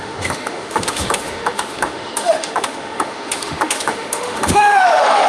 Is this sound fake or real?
fake